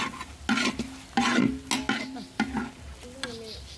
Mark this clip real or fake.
real